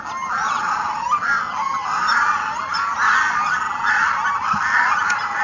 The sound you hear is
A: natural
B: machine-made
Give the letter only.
A